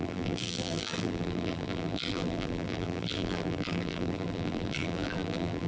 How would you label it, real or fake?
fake